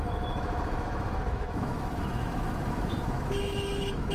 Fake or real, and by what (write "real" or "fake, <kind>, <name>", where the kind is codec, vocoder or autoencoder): fake, autoencoder, DAC-VAE